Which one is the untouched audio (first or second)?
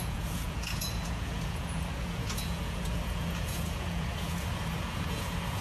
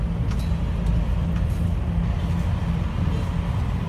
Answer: second